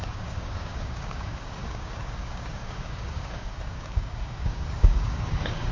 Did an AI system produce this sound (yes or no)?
yes